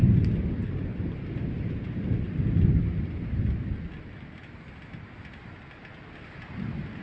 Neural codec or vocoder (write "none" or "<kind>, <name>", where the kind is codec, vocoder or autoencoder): none